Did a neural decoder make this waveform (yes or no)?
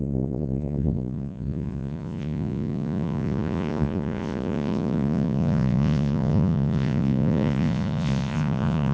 yes